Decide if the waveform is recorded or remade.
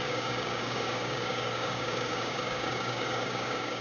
remade